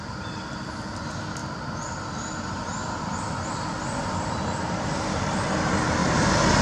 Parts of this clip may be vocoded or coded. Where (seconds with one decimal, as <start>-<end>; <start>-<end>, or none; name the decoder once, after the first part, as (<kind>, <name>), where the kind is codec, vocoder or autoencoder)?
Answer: 1.4-5.4 (vocoder, BigVGAN v2)